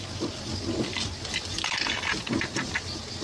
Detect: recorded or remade recorded